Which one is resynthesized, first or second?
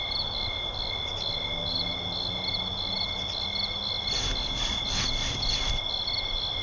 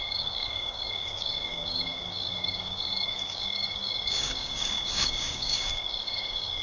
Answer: second